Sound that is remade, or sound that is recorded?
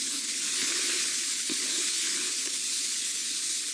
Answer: remade